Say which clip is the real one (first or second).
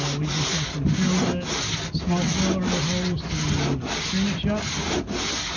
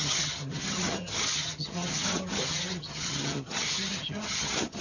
first